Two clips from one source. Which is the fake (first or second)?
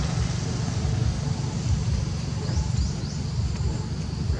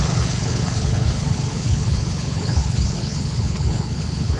second